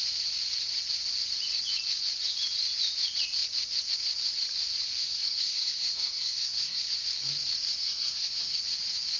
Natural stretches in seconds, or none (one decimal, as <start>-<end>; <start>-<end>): 0.0-5.0; 6.8-7.8; 8.6-9.2